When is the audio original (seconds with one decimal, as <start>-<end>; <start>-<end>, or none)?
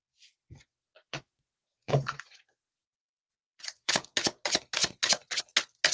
0.0-0.4; 3.9-4.8; 5.4-5.9